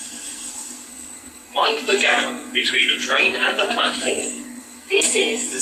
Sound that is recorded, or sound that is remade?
remade